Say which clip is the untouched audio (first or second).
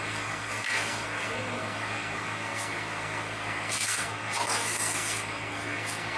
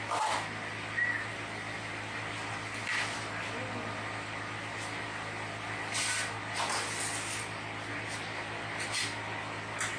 second